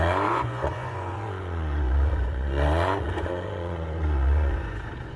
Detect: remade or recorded remade